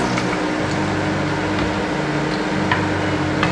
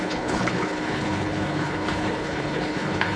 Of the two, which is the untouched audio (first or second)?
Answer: first